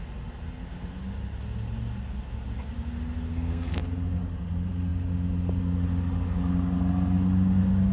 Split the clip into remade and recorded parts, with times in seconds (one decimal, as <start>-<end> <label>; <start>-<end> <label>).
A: 0.0-3.3 recorded; 3.3-3.8 remade; 3.8-7.9 recorded